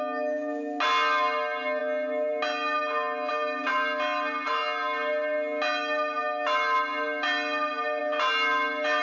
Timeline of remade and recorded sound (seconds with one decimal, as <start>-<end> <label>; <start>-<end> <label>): 0.0-9.0 recorded